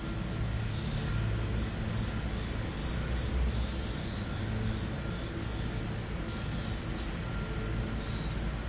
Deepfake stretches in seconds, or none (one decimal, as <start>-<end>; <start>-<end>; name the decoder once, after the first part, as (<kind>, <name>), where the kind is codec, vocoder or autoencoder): none